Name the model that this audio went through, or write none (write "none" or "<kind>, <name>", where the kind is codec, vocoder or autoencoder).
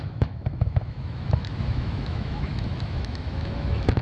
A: autoencoder, DAC-VAE